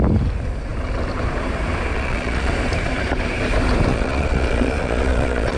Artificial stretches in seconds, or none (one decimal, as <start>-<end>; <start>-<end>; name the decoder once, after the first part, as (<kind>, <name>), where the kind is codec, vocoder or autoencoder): 1.9-2.5 (vocoder, Vocos); 3.9-5.6